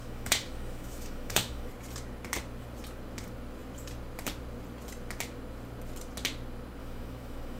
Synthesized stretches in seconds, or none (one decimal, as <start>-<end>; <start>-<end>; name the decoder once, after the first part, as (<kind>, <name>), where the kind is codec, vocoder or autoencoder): 0.0-1.7 (autoencoder, DAC-VAE); 6.8-7.6